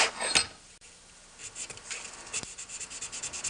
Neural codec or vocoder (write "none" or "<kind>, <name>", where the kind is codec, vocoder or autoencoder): none